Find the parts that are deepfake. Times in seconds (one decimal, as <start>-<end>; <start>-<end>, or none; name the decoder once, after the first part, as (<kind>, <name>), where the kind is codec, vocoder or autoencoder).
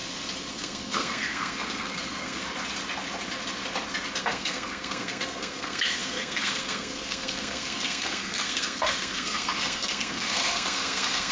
0.5-2.4 (codec, SNAC); 4.2-11.3